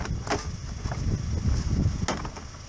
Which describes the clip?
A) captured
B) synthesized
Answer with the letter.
A